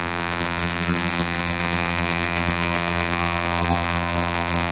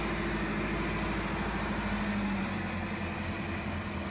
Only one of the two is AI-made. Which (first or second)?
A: first